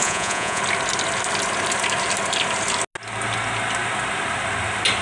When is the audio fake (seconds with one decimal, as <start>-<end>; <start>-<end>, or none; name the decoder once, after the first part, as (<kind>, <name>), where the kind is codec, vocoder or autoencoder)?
0.0-0.6 (vocoder, Vocos)